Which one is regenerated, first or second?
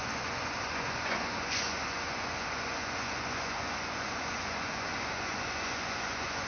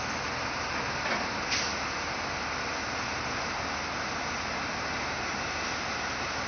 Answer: first